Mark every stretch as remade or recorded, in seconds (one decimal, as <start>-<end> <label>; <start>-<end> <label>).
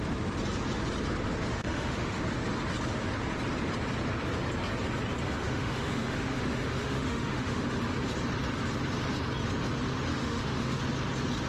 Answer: 0.0-1.5 recorded; 1.5-2.2 remade; 2.2-5.4 recorded; 5.4-7.8 remade; 7.8-10.1 recorded; 10.1-10.8 remade; 10.8-11.5 recorded